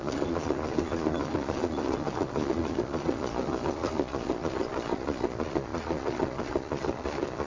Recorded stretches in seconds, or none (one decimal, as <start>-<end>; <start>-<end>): none